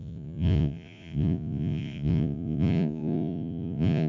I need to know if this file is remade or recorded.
remade